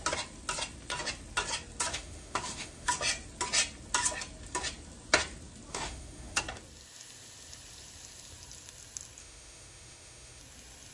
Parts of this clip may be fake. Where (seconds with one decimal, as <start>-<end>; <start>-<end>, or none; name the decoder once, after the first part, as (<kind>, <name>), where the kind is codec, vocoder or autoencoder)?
1.9-2.9 (autoencoder, DAC-VAE); 5.7-6.4; 9.2-10.4